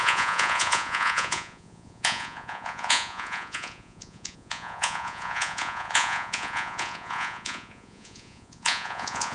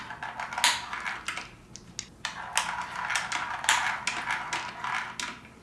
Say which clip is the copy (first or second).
first